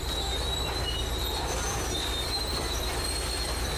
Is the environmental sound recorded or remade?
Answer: recorded